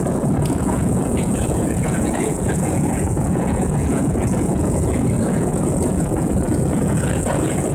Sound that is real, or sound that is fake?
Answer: fake